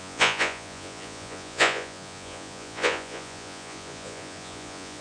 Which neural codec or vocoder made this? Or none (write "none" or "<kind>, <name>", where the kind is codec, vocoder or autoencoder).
vocoder, Vocos